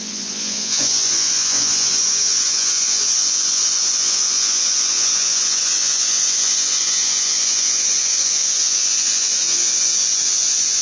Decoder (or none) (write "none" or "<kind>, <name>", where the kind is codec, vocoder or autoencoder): vocoder, Vocos